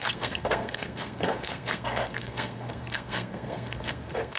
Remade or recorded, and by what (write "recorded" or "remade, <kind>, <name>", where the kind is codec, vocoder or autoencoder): remade, codec, SNAC